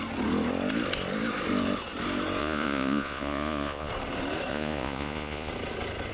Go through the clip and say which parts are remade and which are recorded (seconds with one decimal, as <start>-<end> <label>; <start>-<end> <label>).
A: 0.0-2.4 recorded; 2.4-3.9 remade; 3.9-4.5 recorded; 4.5-5.5 remade; 5.5-6.1 recorded